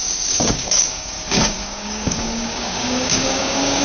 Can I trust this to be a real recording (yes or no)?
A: no